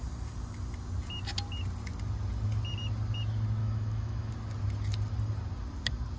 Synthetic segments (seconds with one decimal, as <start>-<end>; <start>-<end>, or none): 3.6-4.3